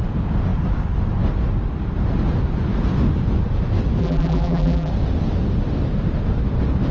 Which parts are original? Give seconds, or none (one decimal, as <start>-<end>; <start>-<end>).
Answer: 0.0-4.0; 4.9-6.9